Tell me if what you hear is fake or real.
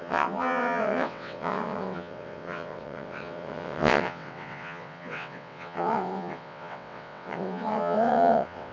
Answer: fake